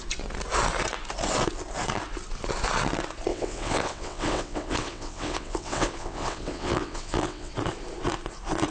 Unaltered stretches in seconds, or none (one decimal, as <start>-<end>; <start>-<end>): 0.0-3.3; 7.5-8.7

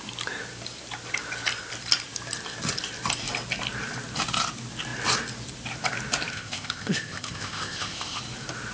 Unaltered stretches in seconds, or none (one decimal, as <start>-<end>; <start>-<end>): 0.0-6.3; 8.2-8.7

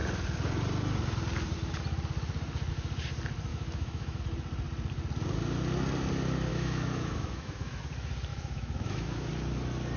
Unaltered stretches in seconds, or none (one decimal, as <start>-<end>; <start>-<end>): 0.0-3.5; 4.2-6.5; 7.8-8.3; 9.3-10.0

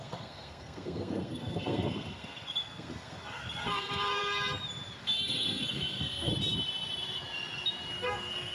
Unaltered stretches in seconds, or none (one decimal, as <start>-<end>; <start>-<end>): 4.2-5.0; 6.3-8.0

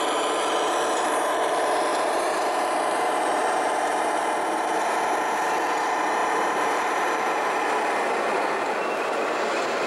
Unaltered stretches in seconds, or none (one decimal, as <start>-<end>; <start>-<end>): 0.0-1.9; 4.2-6.2; 7.6-9.9

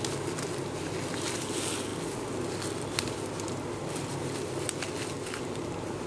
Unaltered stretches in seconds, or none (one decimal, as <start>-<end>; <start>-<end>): 0.0-6.1

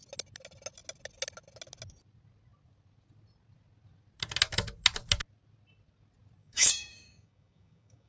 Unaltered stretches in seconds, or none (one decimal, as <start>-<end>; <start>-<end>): 0.0-6.4